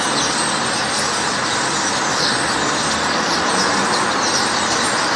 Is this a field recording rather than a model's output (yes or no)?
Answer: yes